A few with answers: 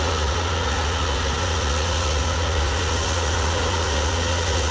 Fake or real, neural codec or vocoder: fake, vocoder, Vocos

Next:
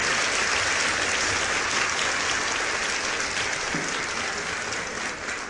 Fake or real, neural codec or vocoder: real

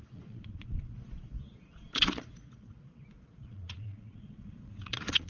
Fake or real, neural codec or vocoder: fake, vocoder, Vocos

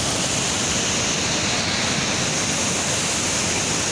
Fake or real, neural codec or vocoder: real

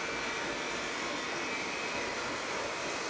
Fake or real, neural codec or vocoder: real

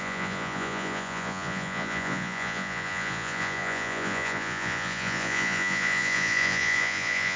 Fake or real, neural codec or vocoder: fake, vocoder, Vocos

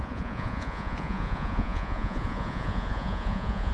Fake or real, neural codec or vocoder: fake, vocoder, Vocos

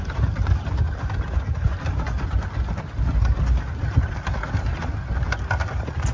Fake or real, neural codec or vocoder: real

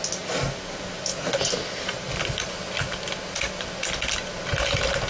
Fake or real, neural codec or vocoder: real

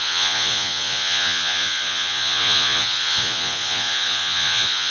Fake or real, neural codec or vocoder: fake, vocoder, Vocos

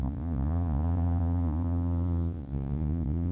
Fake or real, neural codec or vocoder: fake, vocoder, Vocos